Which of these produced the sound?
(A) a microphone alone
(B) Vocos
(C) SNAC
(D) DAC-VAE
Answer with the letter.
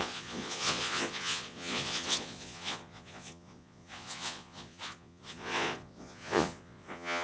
B